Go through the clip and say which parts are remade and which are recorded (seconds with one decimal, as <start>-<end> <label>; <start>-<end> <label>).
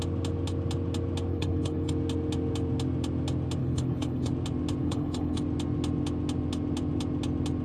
0.0-1.3 recorded; 1.3-1.9 remade; 1.9-3.6 recorded; 3.6-4.3 remade; 4.3-4.8 recorded; 4.8-5.4 remade; 5.4-7.6 recorded